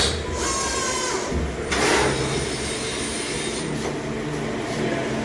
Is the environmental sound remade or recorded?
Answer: recorded